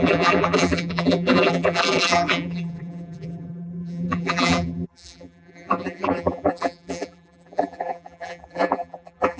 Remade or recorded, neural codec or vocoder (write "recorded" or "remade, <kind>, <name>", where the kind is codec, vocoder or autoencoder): remade, vocoder, BigVGAN v2